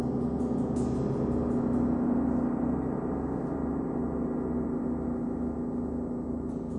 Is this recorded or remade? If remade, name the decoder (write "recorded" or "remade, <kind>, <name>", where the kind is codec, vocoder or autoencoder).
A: recorded